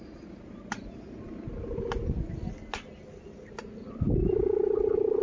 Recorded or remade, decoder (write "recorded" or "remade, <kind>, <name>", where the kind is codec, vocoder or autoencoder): recorded